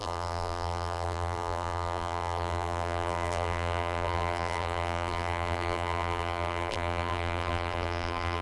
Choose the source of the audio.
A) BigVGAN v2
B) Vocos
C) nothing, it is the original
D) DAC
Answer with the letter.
A